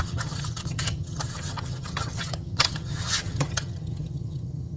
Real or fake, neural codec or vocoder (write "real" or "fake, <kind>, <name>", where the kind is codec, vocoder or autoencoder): fake, vocoder, HiFi-GAN